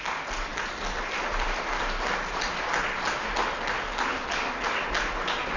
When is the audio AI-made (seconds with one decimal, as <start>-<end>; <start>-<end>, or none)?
0.5-2.5; 4.1-5.6